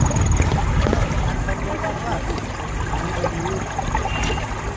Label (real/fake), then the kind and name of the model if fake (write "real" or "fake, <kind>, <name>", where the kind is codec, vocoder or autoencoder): real